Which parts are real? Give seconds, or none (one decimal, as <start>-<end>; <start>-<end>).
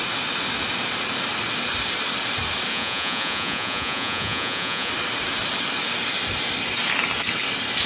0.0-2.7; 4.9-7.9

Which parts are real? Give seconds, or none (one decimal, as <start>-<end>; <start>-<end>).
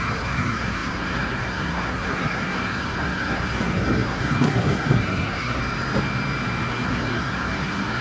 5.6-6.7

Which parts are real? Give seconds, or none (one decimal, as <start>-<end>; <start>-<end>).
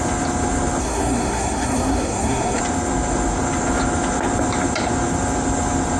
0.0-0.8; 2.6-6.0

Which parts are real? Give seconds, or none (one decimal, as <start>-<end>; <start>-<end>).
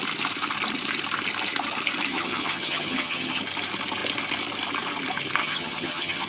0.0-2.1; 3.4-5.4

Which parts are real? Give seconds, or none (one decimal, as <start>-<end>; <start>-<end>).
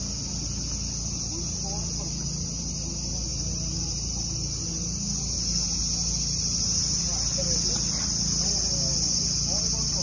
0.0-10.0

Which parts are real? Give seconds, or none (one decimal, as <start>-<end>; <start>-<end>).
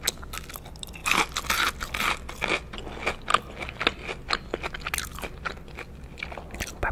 0.0-6.9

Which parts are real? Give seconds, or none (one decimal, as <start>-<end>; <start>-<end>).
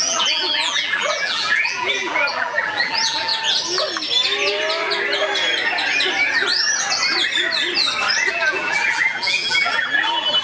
3.3-8.3